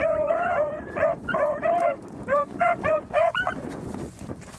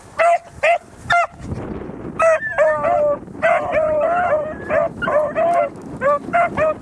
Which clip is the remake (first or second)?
first